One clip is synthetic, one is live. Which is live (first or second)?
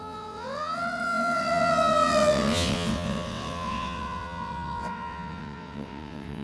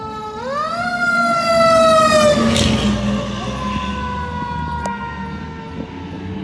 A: second